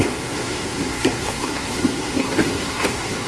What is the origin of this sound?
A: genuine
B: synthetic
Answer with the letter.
B